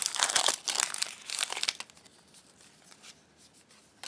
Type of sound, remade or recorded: recorded